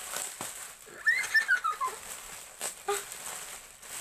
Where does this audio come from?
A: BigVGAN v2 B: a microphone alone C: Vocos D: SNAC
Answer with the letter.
B